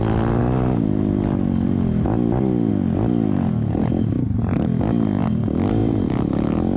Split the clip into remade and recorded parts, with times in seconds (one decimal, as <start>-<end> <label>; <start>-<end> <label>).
0.0-6.8 recorded